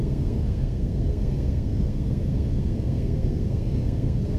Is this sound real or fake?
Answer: fake